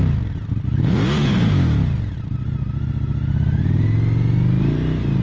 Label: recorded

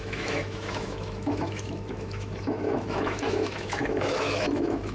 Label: remade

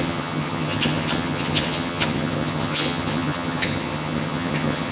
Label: remade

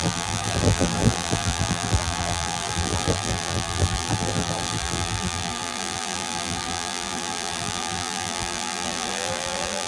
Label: remade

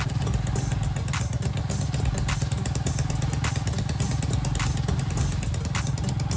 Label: recorded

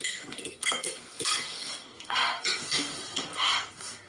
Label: remade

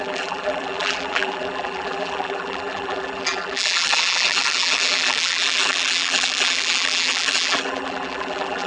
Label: remade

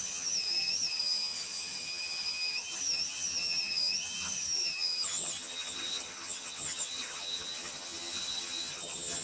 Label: remade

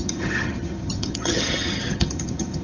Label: remade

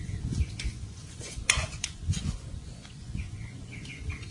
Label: remade